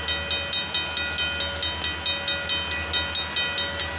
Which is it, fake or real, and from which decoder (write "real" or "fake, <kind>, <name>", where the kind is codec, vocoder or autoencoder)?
real